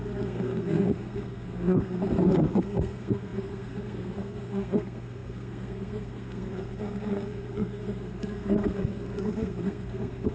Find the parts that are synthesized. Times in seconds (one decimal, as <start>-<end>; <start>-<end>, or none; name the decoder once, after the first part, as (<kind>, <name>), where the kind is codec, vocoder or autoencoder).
0.0-10.3 (codec, SNAC)